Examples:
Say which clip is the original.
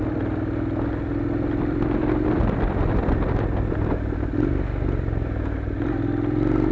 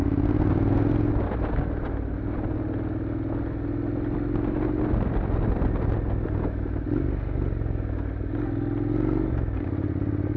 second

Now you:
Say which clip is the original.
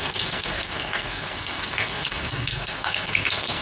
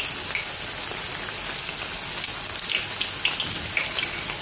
second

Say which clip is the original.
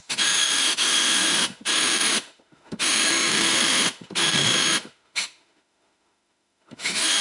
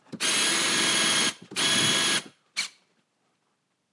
second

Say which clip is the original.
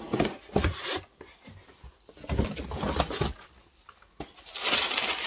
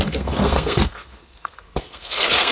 first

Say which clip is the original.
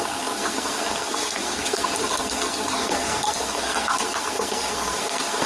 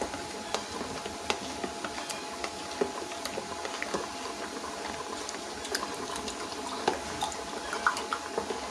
second